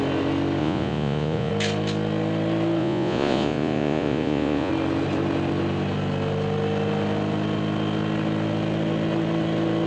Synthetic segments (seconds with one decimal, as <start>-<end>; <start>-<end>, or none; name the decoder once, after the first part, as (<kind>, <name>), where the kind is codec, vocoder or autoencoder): 0.6-1.5 (vocoder, Vocos); 2.8-4.7